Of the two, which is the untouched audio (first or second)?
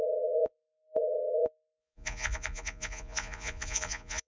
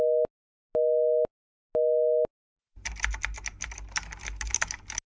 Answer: second